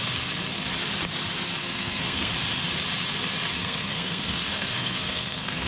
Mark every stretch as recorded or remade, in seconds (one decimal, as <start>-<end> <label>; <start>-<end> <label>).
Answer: 0.0-1.6 recorded; 1.6-2.3 remade; 2.3-3.6 recorded; 3.6-5.7 remade